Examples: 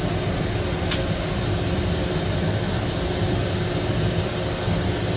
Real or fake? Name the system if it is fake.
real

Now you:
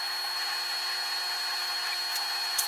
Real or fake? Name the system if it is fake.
real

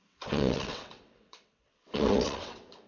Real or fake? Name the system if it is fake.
fake, vocoder, WaveNeXt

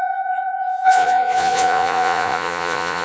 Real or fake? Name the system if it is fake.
fake, vocoder, Vocos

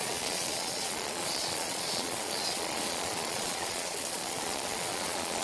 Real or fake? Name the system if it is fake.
fake, vocoder, Vocos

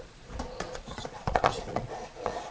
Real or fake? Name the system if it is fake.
fake, vocoder, Vocos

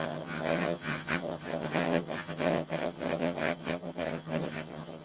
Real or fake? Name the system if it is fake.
fake, vocoder, HiFi-GAN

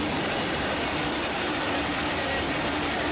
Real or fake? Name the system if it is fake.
real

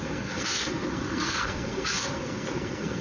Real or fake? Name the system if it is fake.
fake, codec, SNAC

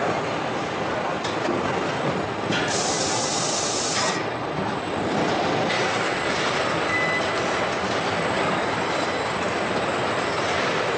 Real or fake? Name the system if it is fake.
real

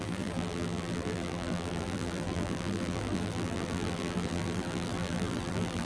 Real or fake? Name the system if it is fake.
fake, vocoder, BigVGAN v2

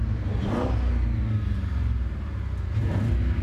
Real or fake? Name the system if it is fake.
real